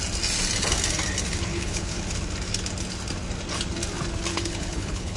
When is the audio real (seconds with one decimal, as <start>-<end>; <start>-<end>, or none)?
0.0-1.5; 2.0-4.3

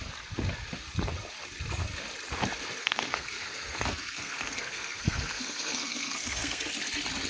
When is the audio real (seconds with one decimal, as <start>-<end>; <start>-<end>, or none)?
0.0-2.8; 6.6-7.3

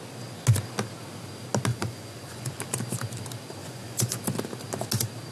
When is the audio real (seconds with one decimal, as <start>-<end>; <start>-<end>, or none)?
0.0-1.7; 2.6-3.6; 4.2-5.3

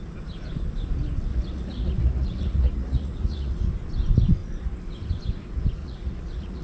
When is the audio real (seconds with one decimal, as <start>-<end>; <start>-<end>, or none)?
0.0-1.3; 3.7-5.8

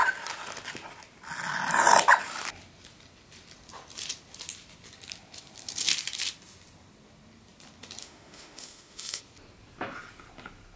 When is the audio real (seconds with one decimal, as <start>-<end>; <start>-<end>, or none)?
0.0-8.0; 9.2-10.8

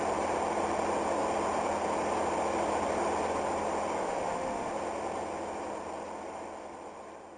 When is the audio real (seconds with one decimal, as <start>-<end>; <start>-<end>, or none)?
0.0-4.0; 4.7-7.4

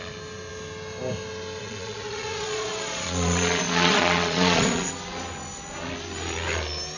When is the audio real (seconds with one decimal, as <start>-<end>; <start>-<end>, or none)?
0.0-1.6; 4.9-7.0